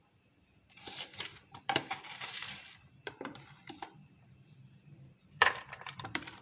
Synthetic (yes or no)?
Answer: yes